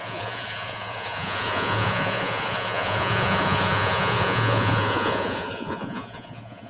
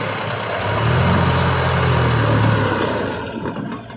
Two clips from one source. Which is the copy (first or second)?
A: first